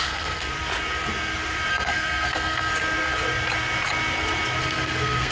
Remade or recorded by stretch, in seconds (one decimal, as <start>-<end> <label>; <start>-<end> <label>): 0.0-0.5 remade; 0.5-1.7 recorded; 1.7-2.7 remade; 2.7-4.6 recorded; 4.6-5.3 remade